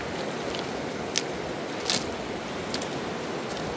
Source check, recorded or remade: recorded